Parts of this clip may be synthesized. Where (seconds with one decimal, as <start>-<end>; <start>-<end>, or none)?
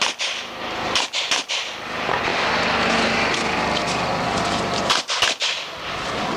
none